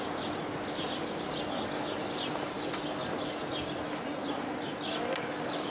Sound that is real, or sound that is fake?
real